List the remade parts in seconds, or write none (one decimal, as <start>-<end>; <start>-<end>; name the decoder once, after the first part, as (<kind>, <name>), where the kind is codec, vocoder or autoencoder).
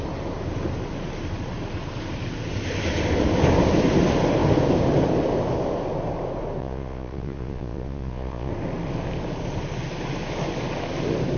6.6-8.5 (vocoder, Vocos)